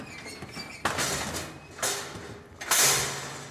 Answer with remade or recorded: recorded